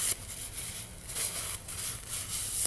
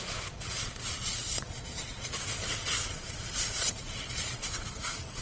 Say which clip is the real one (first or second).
first